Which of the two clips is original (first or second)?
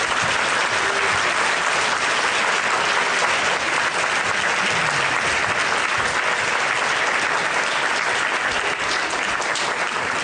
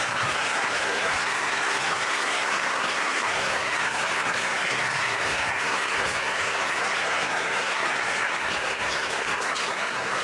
first